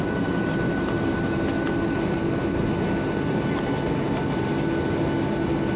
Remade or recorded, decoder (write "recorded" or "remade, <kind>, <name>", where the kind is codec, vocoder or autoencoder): recorded